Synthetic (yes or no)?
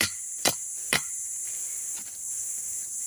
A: yes